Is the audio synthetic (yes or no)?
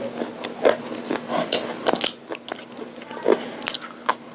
no